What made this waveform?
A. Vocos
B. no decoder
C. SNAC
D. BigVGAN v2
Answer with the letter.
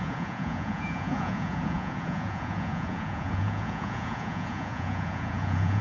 A